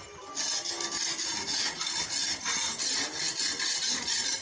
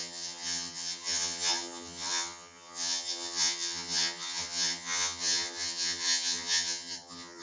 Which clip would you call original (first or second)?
first